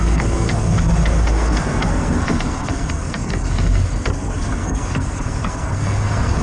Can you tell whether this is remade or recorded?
remade